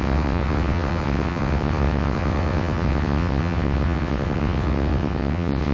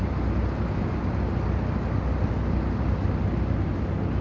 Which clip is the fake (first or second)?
first